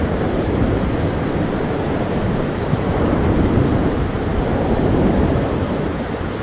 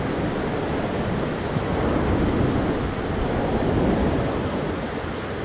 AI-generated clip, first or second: first